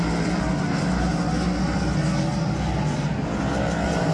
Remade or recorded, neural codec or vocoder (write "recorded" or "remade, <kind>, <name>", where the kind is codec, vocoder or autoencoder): recorded